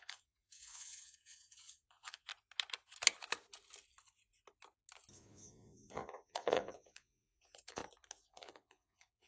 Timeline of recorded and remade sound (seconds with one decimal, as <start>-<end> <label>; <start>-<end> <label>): 0.0-2.3 remade; 2.3-5.1 recorded; 5.1-7.8 remade; 7.8-8.3 recorded; 8.3-9.3 remade